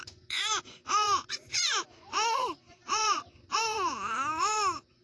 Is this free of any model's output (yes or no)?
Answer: no